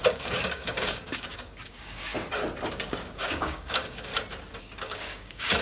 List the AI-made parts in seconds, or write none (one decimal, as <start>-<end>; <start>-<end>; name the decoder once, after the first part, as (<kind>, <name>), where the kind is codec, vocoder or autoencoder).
0.0-2.1 (codec, DAC); 2.7-4.1; 4.6-5.6